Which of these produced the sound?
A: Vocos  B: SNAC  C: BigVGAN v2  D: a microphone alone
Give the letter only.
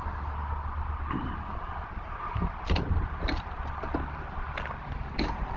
D